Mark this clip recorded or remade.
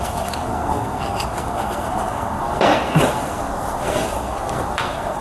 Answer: remade